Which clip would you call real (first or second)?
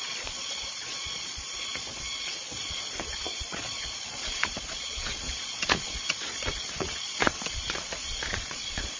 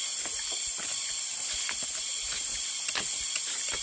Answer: second